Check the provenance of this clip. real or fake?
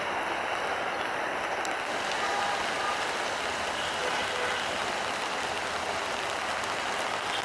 real